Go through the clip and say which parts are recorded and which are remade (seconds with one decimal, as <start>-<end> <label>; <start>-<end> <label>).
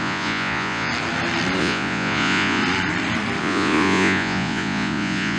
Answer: 0.0-0.9 remade; 0.9-1.6 recorded; 1.6-2.6 remade; 2.6-3.4 recorded; 3.4-5.4 remade